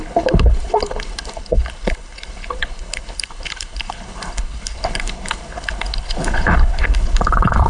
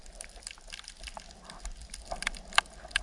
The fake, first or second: first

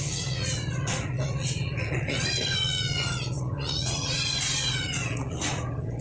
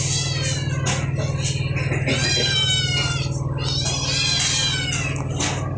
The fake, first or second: first